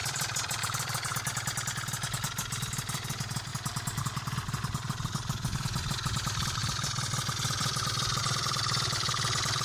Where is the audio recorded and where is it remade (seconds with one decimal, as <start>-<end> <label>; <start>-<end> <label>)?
0.0-1.1 remade; 1.1-2.4 recorded; 2.4-3.5 remade; 3.5-4.0 recorded; 4.0-9.6 remade